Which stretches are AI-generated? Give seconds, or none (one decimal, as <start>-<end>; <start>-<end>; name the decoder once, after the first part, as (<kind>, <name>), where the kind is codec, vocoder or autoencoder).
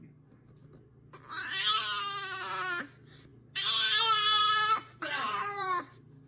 5.0-5.8 (vocoder, BigVGAN v2)